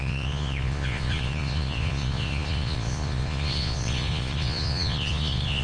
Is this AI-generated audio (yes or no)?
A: yes